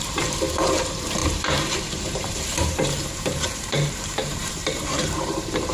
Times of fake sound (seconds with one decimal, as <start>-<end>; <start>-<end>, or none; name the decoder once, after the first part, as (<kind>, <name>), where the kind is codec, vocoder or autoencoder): 0.0-5.7 (vocoder, BigVGAN v2)